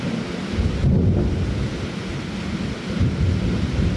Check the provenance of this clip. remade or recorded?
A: recorded